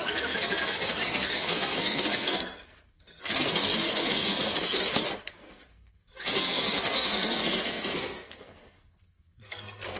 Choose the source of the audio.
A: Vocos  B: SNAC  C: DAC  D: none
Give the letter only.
B